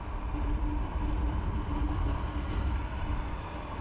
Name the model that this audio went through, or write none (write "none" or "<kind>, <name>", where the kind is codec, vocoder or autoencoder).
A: vocoder, BigVGAN v2